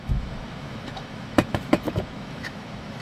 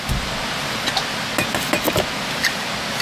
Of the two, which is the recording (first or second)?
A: second